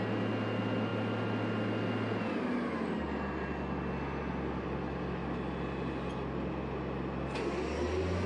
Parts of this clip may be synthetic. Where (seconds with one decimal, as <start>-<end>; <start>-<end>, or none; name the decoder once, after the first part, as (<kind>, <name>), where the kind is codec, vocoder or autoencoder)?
none